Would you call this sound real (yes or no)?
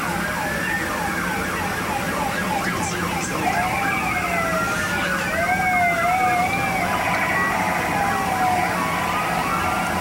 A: yes